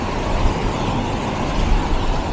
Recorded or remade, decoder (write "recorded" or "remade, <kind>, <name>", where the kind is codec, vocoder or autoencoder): recorded